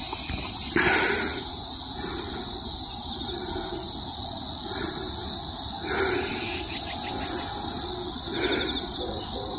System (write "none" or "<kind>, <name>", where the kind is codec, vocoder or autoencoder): none